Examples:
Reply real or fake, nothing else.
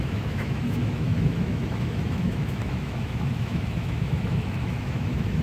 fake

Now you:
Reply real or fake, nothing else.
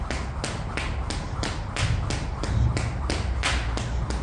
real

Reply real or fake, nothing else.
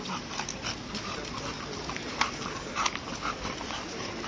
real